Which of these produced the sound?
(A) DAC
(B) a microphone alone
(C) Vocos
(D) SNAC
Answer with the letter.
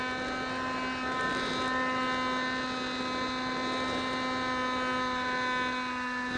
B